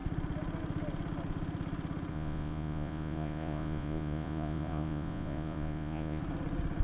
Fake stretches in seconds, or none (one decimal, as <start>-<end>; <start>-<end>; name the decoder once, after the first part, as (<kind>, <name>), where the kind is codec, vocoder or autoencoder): 2.1-6.2 (vocoder, Vocos)